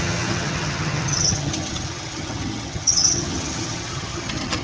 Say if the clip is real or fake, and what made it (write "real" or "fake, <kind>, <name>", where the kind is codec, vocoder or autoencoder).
fake, vocoder, HiFi-GAN